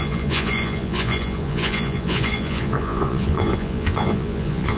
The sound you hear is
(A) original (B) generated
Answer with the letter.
B